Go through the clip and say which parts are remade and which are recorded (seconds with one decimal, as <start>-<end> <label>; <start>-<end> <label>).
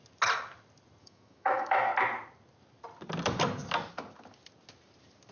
0.0-1.0 recorded; 1.0-1.9 remade; 1.9-5.3 recorded